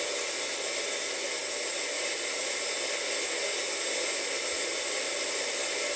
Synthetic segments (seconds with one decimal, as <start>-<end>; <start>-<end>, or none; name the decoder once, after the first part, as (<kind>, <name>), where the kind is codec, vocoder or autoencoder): none